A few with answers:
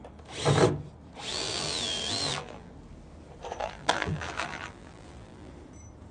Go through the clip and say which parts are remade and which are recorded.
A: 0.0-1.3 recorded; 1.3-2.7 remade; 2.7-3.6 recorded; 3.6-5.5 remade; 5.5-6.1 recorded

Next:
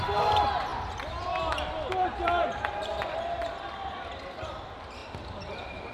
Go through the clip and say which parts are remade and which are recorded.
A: 0.0-0.7 recorded; 0.7-1.4 remade; 1.4-2.0 recorded; 2.0-3.2 remade; 3.2-5.9 recorded

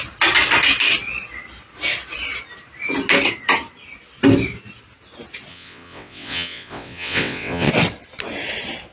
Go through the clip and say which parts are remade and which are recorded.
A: 0.0-5.5 recorded; 5.5-7.7 remade; 7.7-8.9 recorded

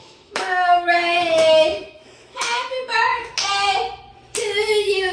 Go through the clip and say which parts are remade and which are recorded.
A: 0.0-3.3 remade; 3.3-4.4 recorded; 4.4-5.1 remade